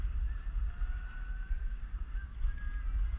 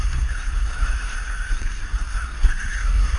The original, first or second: first